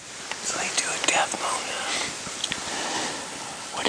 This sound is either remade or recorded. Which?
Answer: recorded